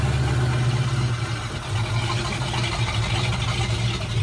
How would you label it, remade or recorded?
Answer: recorded